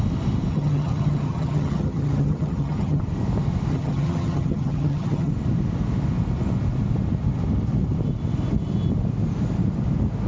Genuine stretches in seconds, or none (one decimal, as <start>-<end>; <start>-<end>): 0.0-0.5; 3.0-3.7; 5.3-10.3